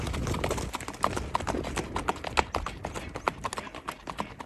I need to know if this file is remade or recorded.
recorded